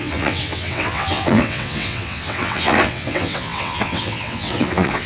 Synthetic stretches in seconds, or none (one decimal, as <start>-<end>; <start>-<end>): 0.0-5.1